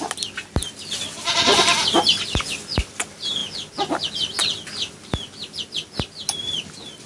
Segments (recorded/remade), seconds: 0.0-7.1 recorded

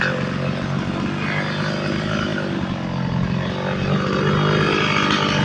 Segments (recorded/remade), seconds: 0.0-5.4 recorded

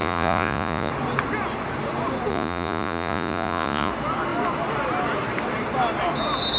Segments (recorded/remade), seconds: 0.0-0.9 remade; 0.9-2.3 recorded; 2.3-3.9 remade; 3.9-6.6 recorded

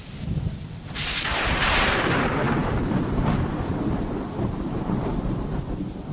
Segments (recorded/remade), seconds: 0.0-6.1 recorded

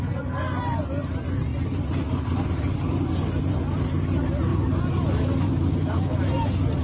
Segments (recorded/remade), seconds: 0.0-6.8 recorded